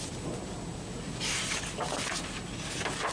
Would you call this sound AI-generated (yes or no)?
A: no